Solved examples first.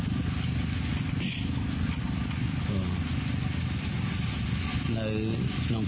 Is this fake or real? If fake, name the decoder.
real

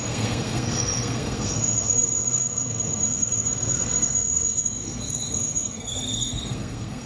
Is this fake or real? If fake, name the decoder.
fake, codec, SNAC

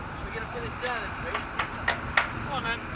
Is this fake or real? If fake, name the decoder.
real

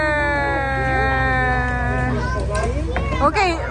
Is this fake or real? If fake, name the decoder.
real